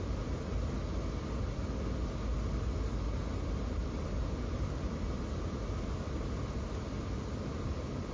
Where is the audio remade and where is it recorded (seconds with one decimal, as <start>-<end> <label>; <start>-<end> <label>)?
0.0-3.8 recorded; 3.8-5.3 remade; 5.3-8.1 recorded